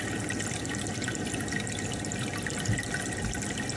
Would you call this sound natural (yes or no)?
yes